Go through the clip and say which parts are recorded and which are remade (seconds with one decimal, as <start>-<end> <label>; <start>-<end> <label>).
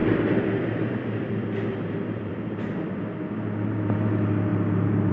0.0-3.0 remade; 3.0-5.1 recorded